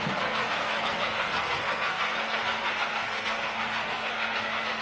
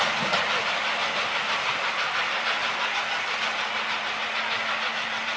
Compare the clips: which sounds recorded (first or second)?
second